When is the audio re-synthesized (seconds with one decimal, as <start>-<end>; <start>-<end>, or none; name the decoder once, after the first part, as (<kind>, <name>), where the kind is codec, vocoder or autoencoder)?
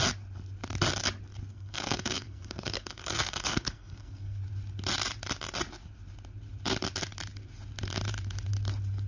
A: 1.5-4.4 (codec, SNAC)